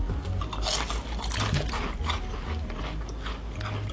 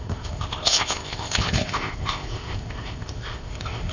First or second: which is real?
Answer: first